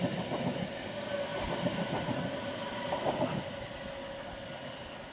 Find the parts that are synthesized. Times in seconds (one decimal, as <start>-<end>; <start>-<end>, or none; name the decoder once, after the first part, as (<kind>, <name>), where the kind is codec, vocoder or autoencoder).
none